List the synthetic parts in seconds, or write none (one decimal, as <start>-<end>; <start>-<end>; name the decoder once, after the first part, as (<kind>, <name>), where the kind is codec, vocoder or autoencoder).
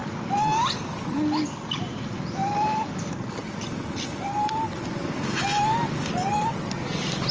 1.7-7.3 (vocoder, BigVGAN v2)